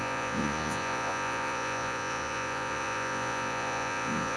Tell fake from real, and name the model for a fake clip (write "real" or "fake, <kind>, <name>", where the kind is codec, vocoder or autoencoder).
fake, vocoder, Vocos